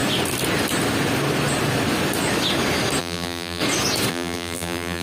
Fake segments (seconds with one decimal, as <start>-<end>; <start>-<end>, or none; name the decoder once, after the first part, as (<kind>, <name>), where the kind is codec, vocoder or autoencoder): 3.0-3.6 (vocoder, BigVGAN v2); 4.1-5.0